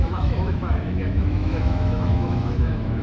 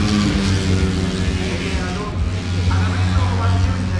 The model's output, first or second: first